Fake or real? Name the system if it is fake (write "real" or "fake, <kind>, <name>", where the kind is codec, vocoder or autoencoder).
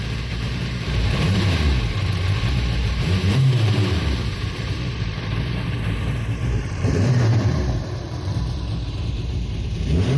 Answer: fake, vocoder, BigVGAN v2